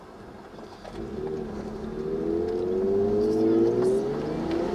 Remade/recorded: recorded